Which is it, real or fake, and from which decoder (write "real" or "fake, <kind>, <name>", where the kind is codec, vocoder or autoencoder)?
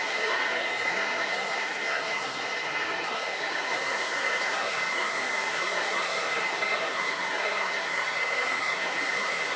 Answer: fake, codec, SNAC